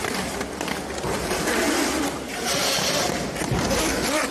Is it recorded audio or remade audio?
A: recorded